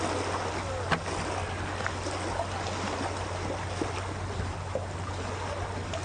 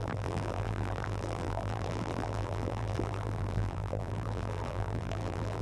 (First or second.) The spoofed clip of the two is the second